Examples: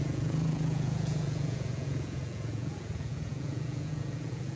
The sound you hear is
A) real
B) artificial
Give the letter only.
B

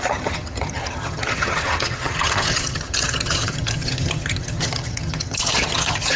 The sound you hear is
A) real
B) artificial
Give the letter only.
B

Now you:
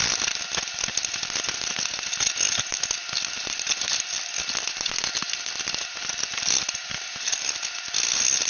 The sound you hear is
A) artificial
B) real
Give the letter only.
B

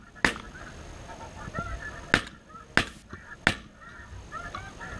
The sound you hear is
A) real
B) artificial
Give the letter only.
A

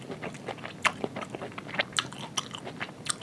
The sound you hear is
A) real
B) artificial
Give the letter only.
A